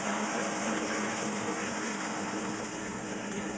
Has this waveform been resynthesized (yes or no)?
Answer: yes